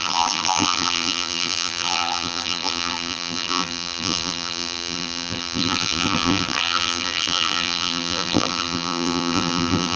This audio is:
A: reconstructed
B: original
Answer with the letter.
A